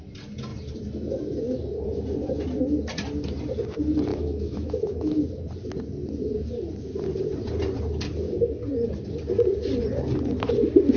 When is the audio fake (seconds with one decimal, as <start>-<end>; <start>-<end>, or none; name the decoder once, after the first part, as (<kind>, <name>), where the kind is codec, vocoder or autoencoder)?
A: 4.1-5.2 (autoencoder, DAC-VAE)